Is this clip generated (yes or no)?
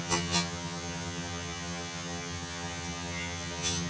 yes